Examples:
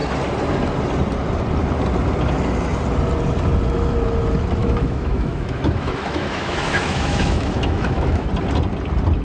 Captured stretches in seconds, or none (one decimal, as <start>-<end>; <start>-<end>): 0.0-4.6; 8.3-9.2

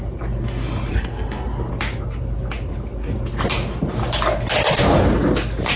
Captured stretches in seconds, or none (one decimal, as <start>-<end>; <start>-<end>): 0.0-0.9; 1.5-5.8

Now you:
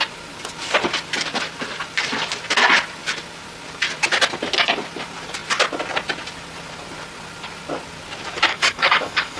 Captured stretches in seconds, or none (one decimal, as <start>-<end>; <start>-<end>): 0.0-8.5

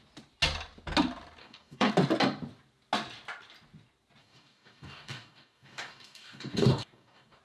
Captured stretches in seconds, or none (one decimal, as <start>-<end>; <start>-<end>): 0.0-1.4; 1.9-4.2

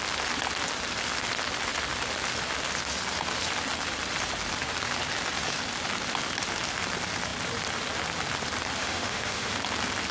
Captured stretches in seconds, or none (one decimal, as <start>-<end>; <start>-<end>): 0.0-8.8; 9.5-10.1